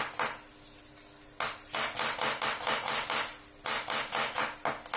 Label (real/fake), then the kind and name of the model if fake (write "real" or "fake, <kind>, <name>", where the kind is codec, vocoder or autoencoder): real